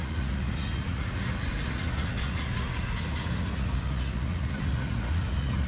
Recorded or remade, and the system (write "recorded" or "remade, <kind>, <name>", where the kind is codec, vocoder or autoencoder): remade, vocoder, Vocos